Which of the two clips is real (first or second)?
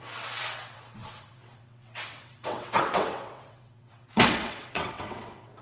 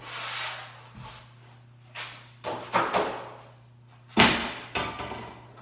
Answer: second